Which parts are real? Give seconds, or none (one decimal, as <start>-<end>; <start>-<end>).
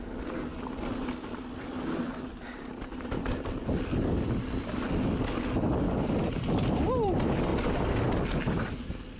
0.0-9.2